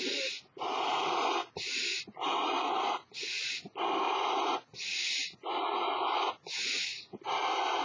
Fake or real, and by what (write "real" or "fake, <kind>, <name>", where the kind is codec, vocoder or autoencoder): real